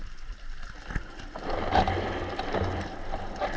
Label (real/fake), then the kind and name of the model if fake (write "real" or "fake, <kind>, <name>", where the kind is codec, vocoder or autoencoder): real